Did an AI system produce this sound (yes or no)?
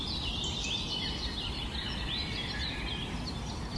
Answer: no